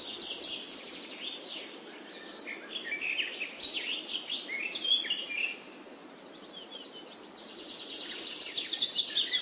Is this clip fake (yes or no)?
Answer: no